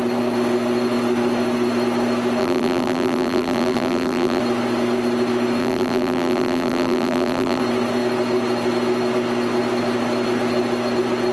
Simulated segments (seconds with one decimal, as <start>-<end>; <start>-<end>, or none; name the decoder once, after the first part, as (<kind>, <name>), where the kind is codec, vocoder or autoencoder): 2.4-4.4 (vocoder, BigVGAN v2); 5.6-7.6